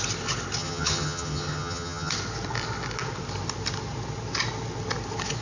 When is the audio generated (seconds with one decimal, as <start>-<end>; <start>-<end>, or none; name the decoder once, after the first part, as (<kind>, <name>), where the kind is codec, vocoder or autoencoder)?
0.6-2.1 (vocoder, HiFi-GAN)